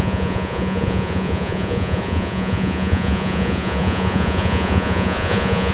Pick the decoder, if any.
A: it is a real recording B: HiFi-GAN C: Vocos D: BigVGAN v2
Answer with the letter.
C